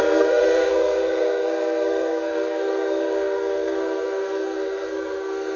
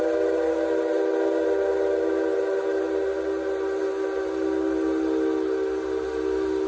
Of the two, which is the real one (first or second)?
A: second